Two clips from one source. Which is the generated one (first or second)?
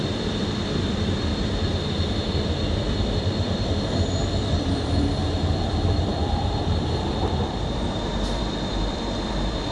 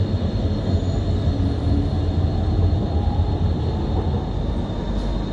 first